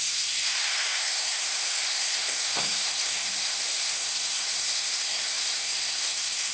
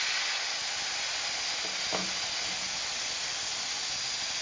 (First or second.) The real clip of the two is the second